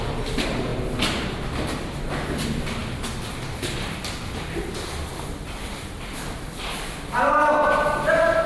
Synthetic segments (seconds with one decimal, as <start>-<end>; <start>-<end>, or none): none